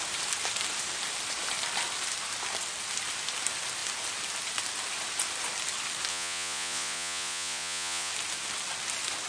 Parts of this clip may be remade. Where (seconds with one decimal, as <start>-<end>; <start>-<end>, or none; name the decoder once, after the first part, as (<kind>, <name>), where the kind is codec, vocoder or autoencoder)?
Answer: 6.1-8.1 (vocoder, Vocos)